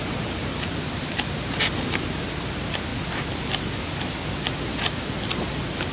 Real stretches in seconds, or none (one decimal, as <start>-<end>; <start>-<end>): 0.0-5.9